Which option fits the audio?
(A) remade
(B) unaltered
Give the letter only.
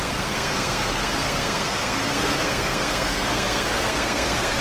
A